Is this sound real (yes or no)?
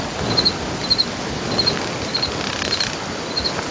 yes